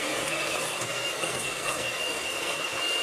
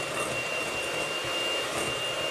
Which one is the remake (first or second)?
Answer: first